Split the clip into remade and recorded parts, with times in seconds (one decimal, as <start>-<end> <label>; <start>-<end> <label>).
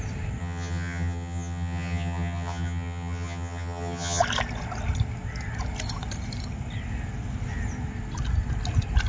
0.0-0.4 recorded; 0.4-4.2 remade; 4.2-9.1 recorded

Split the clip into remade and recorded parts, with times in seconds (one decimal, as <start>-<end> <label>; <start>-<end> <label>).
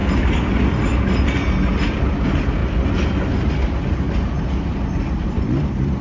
0.0-6.0 recorded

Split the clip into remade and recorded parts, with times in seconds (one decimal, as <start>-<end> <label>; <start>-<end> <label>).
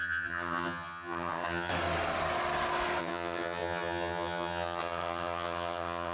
0.0-1.7 remade; 1.7-3.0 recorded; 3.0-6.1 remade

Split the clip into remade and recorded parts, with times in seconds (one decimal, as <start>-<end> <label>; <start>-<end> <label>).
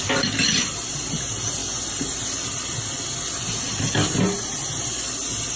0.0-5.6 recorded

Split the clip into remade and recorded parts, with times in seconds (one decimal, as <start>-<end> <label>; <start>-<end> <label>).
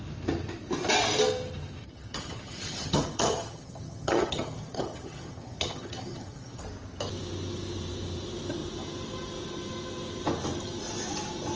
0.0-1.8 recorded; 1.8-6.6 remade; 6.6-11.6 recorded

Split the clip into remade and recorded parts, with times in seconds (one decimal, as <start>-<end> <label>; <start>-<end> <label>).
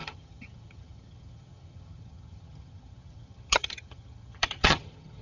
0.0-5.2 remade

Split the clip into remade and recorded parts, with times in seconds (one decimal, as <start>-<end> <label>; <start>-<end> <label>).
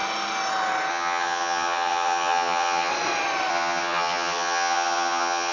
0.0-0.9 recorded; 0.9-2.9 remade; 2.9-3.5 recorded; 3.5-5.5 remade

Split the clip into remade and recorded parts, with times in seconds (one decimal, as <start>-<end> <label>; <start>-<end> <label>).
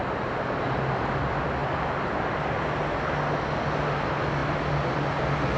0.0-5.6 recorded